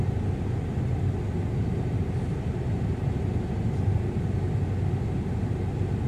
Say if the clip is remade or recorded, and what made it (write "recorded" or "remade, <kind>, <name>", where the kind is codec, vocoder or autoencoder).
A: recorded